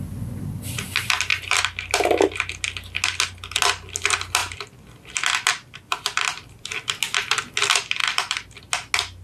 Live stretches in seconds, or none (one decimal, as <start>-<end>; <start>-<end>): 0.0-1.3; 2.5-8.0; 8.6-9.2